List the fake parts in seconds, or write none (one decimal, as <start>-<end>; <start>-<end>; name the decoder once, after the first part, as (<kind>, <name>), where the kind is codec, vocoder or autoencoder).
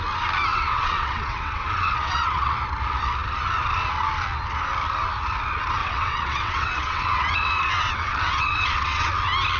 0.5-2.5 (vocoder, WaveNeXt); 5.8-9.1